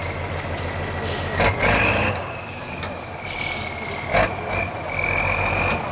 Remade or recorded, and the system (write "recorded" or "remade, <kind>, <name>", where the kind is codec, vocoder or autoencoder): recorded